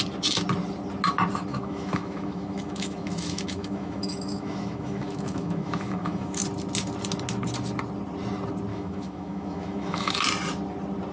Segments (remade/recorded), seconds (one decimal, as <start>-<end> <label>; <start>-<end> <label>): 0.0-1.5 recorded; 1.5-6.4 remade; 6.4-8.7 recorded; 8.7-10.1 remade; 10.1-11.1 recorded